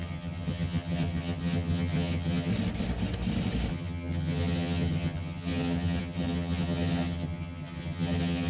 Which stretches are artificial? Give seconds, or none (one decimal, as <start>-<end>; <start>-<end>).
0.0-2.5; 3.7-8.5